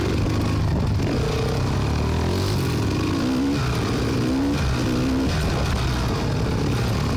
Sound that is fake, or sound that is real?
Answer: real